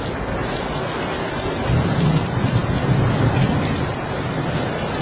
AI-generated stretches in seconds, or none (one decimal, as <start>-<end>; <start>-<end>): none